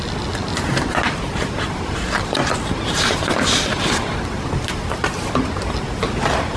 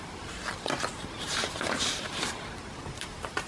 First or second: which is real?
first